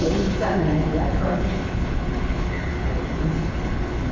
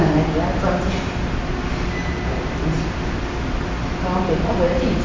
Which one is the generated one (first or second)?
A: first